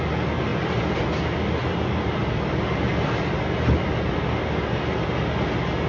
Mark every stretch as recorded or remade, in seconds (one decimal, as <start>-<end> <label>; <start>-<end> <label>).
0.0-0.5 recorded; 0.5-1.0 remade; 1.0-1.6 recorded; 1.6-5.1 remade; 5.1-5.9 recorded